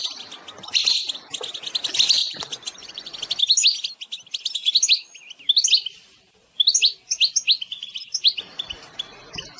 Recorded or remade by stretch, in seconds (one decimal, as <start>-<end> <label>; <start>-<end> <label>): 0.0-2.2 recorded; 2.2-3.1 remade; 3.1-9.6 recorded